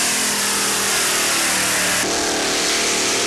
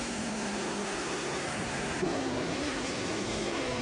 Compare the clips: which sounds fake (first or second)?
second